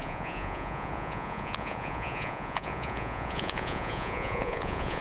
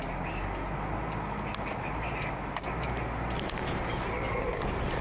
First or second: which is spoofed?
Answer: first